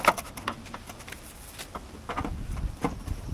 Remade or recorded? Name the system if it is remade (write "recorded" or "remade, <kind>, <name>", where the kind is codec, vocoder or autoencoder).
recorded